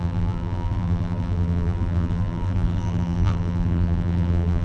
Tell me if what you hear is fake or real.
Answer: fake